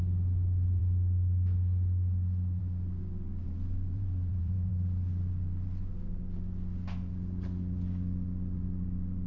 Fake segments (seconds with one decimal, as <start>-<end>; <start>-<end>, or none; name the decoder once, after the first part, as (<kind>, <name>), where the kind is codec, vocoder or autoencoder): 3.4-4.7 (vocoder, Vocos)